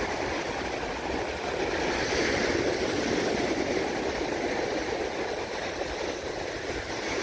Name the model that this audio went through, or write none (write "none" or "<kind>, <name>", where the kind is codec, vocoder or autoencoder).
none